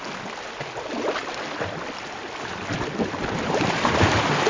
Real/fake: fake